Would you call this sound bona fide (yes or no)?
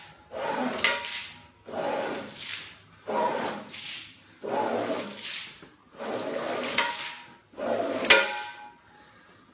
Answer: yes